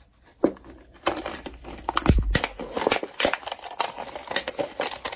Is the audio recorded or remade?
recorded